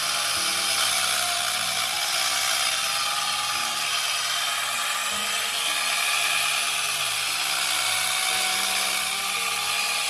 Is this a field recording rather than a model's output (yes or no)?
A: yes